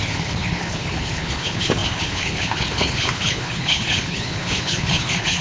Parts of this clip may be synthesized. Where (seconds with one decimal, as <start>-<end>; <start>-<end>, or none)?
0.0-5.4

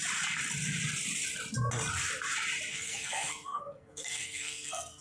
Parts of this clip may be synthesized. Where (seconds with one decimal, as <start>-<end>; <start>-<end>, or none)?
2.7-5.0

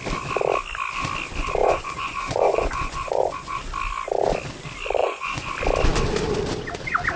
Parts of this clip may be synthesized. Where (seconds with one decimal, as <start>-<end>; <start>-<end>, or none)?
1.6-3.6; 5.0-5.5